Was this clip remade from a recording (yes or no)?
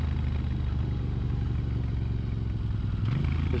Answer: no